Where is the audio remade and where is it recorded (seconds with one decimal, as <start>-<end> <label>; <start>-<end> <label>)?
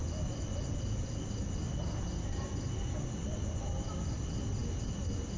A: 0.0-5.4 recorded